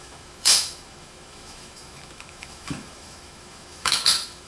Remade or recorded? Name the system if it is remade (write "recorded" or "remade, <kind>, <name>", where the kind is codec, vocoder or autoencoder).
remade, autoencoder, DAC-VAE